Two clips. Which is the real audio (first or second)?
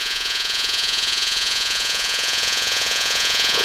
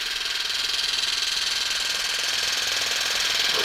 second